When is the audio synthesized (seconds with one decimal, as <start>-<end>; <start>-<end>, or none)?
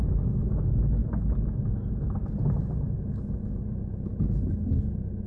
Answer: 1.0-1.7